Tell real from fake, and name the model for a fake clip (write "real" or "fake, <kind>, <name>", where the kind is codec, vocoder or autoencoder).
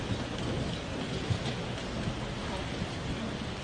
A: real